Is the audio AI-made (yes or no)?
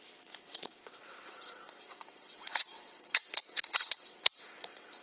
yes